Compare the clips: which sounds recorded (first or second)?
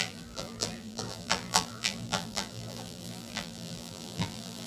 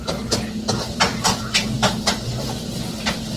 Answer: second